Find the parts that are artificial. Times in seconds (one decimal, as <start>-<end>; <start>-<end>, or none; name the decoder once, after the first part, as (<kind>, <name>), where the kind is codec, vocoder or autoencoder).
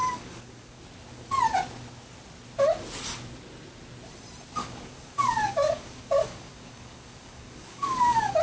0.0-0.8 (codec, DAC); 4.6-8.4